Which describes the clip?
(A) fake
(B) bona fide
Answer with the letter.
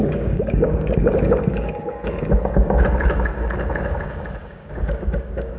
A